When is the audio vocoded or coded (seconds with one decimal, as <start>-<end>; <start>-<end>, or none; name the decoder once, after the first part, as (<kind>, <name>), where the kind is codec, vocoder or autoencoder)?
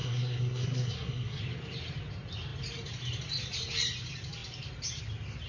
0.0-1.4 (codec, SNAC)